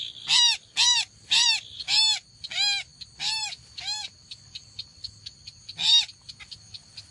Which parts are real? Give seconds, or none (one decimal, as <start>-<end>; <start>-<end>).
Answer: 0.0-7.1